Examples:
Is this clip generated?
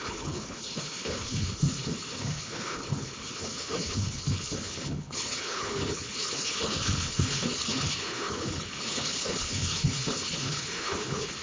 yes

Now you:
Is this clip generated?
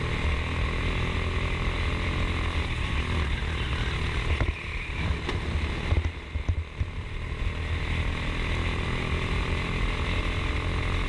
no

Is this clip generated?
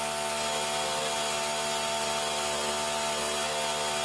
no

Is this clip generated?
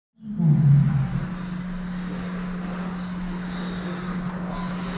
no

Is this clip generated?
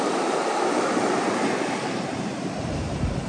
yes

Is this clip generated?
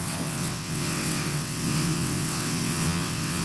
yes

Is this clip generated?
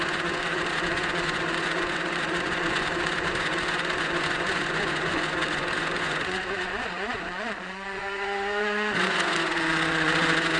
yes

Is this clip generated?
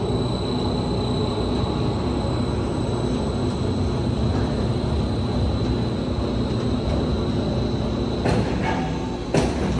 no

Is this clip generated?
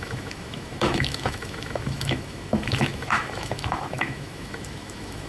yes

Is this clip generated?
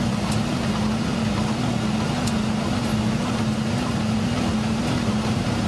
no